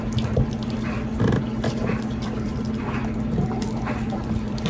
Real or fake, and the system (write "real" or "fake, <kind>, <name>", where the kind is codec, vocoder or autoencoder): fake, vocoder, BigVGAN v2